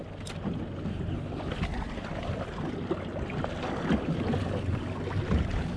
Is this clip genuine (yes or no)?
yes